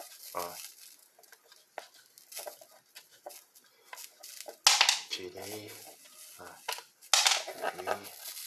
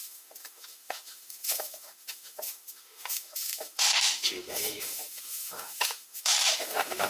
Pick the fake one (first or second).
second